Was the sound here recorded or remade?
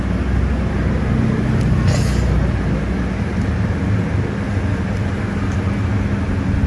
recorded